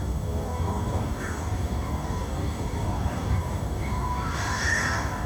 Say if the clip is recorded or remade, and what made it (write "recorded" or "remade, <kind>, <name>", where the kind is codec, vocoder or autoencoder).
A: remade, codec, DAC